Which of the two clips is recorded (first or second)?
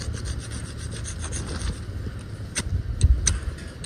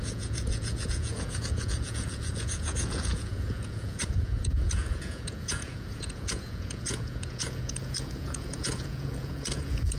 first